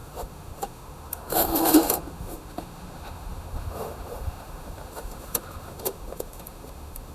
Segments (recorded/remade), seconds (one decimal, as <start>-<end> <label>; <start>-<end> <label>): 0.0-7.1 remade